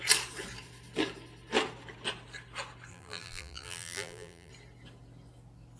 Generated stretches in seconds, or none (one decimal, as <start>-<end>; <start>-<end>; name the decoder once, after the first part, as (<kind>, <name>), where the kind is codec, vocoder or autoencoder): 2.9-4.5 (vocoder, BigVGAN v2)